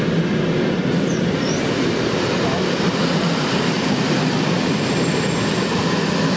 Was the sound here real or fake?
real